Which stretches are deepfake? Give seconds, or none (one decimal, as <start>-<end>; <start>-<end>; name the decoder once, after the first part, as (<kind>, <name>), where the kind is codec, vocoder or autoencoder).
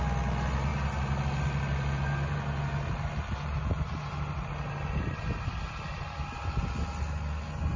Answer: none